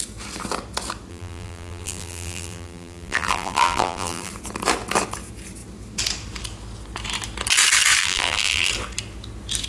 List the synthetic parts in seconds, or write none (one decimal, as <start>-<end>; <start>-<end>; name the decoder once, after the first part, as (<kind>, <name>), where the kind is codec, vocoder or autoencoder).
1.1-4.3 (vocoder, BigVGAN v2); 8.0-8.7

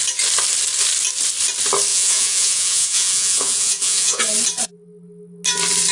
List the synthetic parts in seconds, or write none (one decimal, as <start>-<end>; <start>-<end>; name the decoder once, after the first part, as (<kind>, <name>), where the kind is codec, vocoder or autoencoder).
1.9-4.2 (vocoder, Vocos)